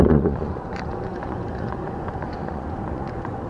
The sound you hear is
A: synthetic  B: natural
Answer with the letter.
A